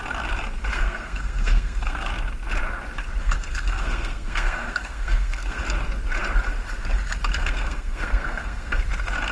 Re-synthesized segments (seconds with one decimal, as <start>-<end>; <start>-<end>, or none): 0.7-2.1; 3.2-5.6; 7.3-8.8